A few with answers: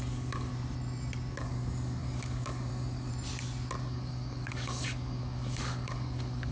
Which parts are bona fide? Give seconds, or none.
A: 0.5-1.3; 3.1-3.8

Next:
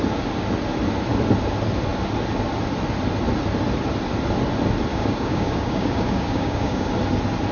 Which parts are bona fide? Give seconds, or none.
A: 0.0-4.9; 6.9-7.5

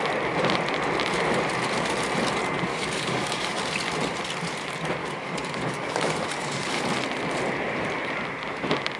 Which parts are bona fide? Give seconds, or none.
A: 0.0-2.7; 3.6-5.0; 6.8-9.0